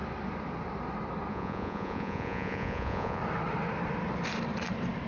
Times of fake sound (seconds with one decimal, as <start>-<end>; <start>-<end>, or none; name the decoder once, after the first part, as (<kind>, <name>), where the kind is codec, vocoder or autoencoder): 1.3-3.2 (vocoder, Vocos)